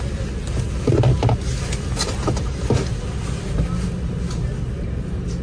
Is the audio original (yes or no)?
yes